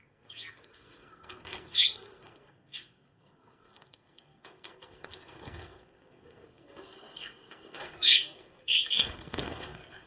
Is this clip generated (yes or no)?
yes